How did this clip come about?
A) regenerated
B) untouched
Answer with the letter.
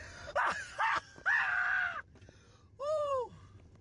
A